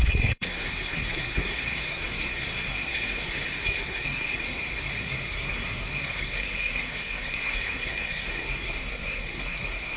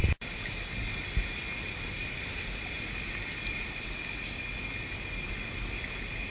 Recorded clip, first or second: second